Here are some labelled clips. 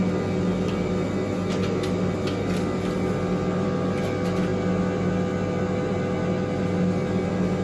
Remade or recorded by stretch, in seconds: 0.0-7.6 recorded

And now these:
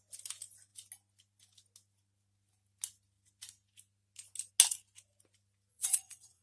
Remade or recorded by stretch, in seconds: 0.0-5.7 recorded; 5.7-6.4 remade

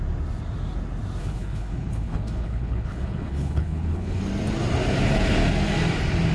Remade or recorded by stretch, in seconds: 0.0-1.2 recorded; 1.2-4.2 remade; 4.2-6.3 recorded

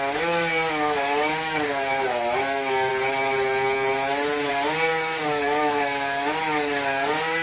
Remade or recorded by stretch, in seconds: 0.0-2.9 remade; 2.9-4.5 recorded; 4.5-7.4 remade